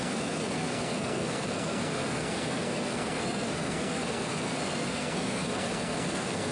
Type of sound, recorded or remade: remade